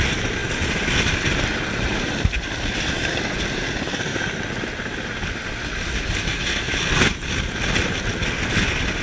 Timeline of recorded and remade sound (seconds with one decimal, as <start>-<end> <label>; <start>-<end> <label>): 0.0-9.0 recorded